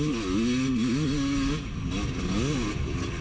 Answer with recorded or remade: recorded